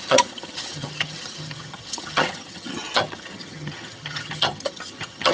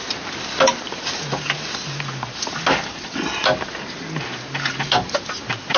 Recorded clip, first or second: second